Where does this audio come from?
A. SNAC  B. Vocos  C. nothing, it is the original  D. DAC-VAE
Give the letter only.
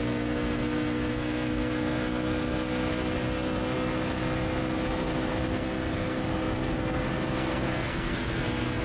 A